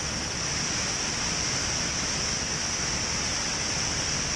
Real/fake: real